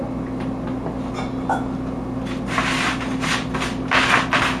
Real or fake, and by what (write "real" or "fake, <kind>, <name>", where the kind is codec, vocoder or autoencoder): real